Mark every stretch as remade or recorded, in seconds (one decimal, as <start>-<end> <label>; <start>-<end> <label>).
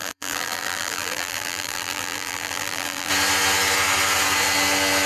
0.0-3.1 remade; 3.1-5.1 recorded